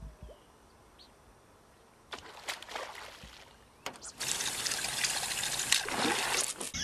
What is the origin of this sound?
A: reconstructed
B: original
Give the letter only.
B